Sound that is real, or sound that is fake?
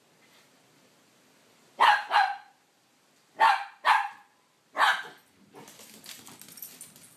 real